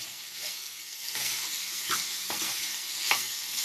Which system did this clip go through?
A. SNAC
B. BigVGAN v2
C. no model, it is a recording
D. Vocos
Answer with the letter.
A